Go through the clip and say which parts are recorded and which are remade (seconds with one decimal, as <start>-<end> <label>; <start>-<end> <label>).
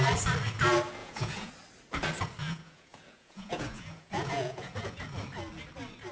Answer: 0.0-1.0 recorded; 1.0-1.5 remade; 1.5-2.4 recorded; 2.4-5.0 remade; 5.0-6.1 recorded